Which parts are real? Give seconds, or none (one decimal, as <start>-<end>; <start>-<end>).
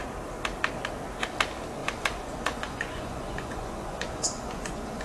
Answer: 0.0-1.8